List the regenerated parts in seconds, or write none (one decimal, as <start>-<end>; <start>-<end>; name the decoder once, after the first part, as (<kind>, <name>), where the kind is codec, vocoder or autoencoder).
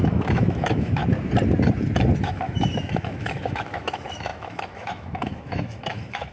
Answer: 0.0-1.0 (autoencoder, DAC-VAE); 2.2-6.3